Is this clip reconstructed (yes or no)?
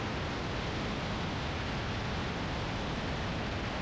no